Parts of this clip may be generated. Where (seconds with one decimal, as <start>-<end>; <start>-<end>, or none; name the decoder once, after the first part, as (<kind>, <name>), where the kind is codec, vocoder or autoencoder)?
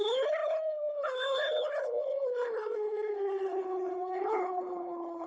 0.0-5.3 (codec, HILCodec)